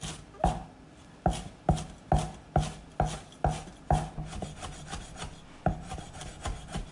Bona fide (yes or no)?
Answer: yes